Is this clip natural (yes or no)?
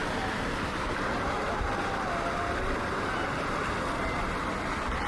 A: yes